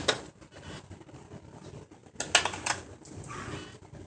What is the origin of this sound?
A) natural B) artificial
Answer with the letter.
A